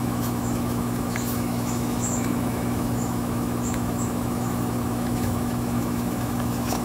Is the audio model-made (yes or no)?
yes